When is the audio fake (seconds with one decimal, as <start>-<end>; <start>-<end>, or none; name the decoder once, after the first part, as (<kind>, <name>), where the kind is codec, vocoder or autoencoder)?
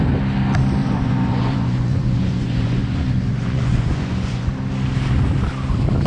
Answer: 0.8-4.5 (vocoder, Vocos)